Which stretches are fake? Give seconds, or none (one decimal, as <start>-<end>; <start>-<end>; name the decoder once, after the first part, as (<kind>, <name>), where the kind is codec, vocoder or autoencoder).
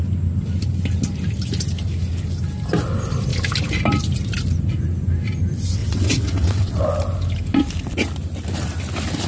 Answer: 5.8-6.8 (vocoder, WaveNeXt)